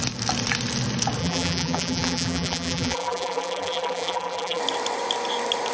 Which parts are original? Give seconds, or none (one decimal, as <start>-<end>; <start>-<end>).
0.0-1.2; 4.6-5.7